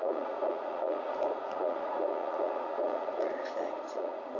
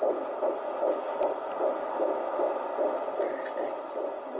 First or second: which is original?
second